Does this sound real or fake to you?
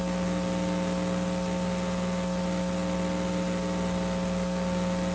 real